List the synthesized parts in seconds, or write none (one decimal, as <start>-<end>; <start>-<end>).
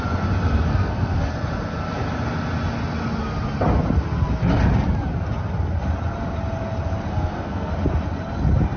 0.7-1.2; 7.1-7.7